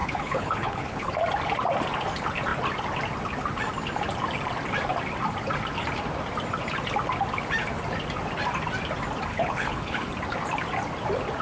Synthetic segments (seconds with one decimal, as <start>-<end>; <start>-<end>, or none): 0.0-1.1; 9.3-10.1